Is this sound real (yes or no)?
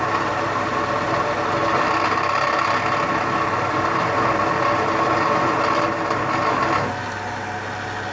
yes